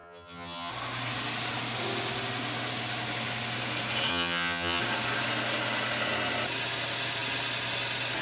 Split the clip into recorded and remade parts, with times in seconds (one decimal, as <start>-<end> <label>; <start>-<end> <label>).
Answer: 0.0-0.7 remade; 0.7-4.1 recorded; 4.1-4.8 remade; 4.8-8.2 recorded

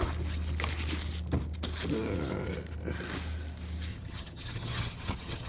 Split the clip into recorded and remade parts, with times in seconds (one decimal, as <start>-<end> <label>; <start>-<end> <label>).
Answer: 0.0-3.9 recorded; 3.9-5.5 remade